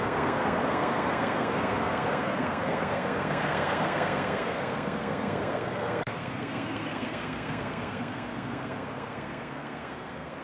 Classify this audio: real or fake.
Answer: fake